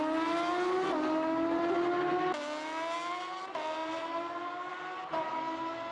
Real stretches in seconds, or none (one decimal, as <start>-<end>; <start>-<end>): 0.0-3.8; 5.4-5.9